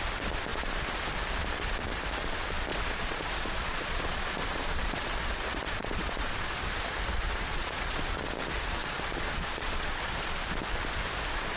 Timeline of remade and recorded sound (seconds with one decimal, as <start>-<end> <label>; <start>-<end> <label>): 0.0-2.7 recorded; 2.7-6.3 remade; 6.3-7.5 recorded; 7.5-8.1 remade; 8.1-8.8 recorded; 8.8-10.4 remade; 10.4-11.6 recorded